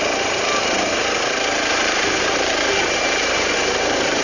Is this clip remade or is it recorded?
remade